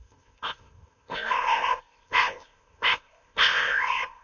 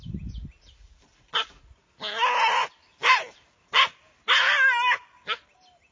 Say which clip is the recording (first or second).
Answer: second